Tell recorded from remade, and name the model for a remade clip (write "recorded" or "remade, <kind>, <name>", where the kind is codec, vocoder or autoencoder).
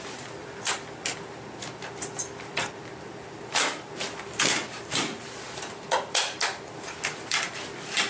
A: recorded